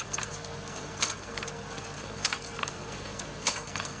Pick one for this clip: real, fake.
fake